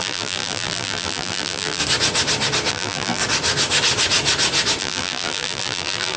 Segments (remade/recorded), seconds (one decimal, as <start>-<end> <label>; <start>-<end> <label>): 0.0-1.8 remade; 1.8-2.7 recorded; 2.7-3.2 remade; 3.2-4.8 recorded; 4.8-6.2 remade